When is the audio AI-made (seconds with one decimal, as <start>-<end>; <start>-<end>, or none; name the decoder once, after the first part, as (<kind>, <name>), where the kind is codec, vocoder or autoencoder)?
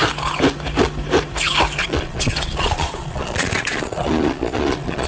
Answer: 1.8-5.1 (vocoder, Vocos)